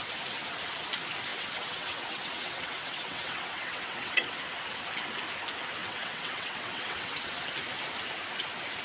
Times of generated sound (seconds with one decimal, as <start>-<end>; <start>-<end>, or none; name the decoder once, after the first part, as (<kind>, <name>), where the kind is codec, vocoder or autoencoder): 1.3-4.4 (vocoder, WaveNeXt); 5.8-7.3